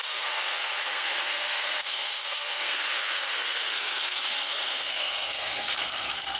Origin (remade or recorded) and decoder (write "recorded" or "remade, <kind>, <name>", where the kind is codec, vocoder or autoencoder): remade, codec, SNAC